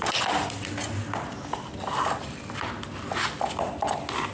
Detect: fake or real real